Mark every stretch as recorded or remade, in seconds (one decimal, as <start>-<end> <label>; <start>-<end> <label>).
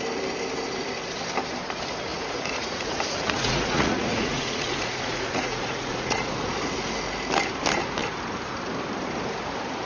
0.0-2.1 recorded; 2.1-6.3 remade; 6.3-9.9 recorded